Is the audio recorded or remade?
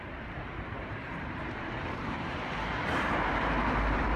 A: remade